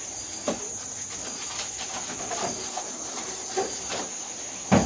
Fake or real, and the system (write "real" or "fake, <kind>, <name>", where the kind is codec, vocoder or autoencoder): real